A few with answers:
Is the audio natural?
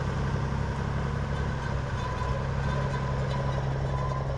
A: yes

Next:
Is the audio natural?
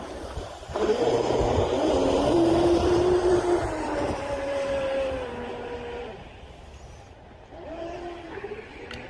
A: no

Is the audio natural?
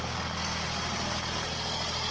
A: yes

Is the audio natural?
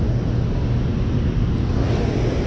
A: yes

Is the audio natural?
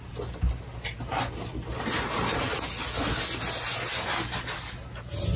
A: yes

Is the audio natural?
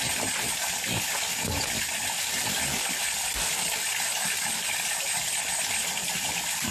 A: yes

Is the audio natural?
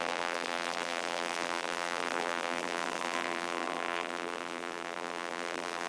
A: no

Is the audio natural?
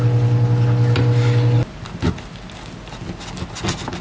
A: yes